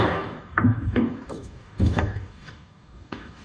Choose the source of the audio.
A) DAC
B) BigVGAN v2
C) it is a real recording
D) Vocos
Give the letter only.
A